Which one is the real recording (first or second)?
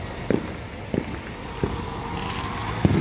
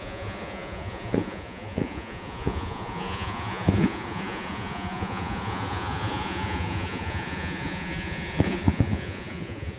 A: first